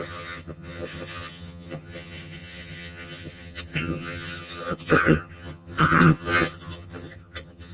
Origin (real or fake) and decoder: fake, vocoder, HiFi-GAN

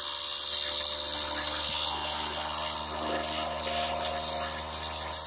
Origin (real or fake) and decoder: real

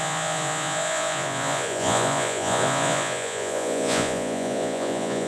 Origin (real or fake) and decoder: fake, vocoder, Vocos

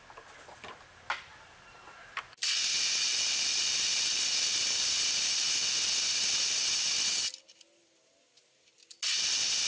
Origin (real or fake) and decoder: real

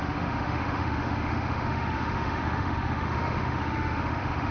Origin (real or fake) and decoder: fake, autoencoder, DAC-VAE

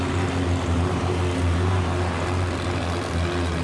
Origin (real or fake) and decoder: real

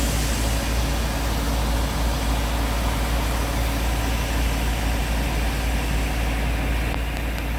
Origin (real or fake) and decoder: real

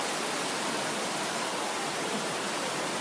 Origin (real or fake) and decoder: fake, vocoder, BigVGAN v2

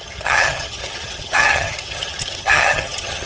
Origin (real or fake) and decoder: fake, vocoder, HiFi-GAN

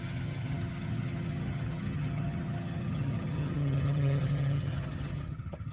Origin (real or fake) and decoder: fake, vocoder, HiFi-GAN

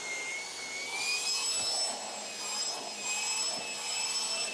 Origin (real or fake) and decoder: real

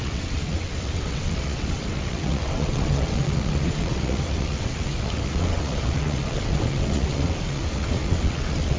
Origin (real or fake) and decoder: fake, vocoder, WaveNeXt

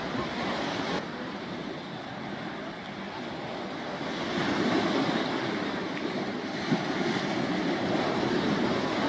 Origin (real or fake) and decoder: real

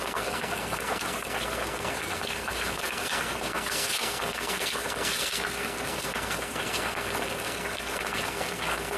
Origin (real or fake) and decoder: fake, codec, SNAC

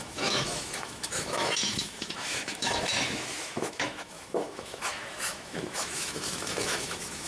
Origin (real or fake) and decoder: fake, autoencoder, DAC-VAE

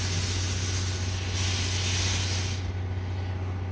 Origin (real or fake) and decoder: real